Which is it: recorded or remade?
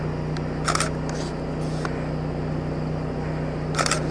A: recorded